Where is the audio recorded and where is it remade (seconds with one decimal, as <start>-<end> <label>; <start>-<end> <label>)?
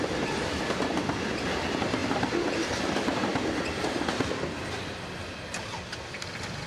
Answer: 0.0-6.7 recorded